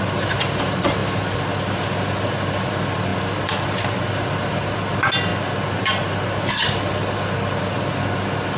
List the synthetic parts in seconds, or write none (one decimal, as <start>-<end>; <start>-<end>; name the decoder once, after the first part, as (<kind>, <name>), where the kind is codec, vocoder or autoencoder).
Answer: none